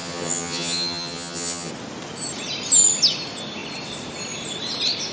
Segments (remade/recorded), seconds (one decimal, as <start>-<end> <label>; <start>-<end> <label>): 0.0-1.7 remade; 1.7-5.1 recorded